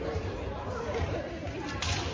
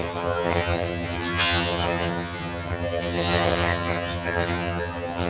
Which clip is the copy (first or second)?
second